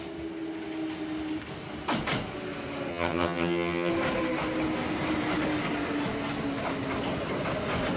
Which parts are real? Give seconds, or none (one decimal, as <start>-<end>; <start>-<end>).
0.0-2.9; 3.9-8.0